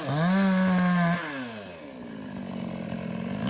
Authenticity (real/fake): real